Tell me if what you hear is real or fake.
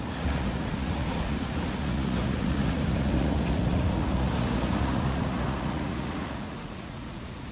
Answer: fake